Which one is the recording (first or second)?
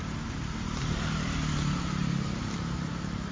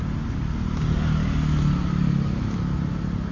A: second